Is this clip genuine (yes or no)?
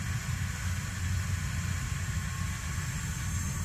yes